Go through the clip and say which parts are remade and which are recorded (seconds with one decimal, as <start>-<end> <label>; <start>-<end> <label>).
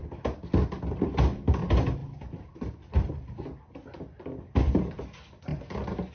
0.0-6.1 recorded